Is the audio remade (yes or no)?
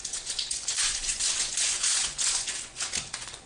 yes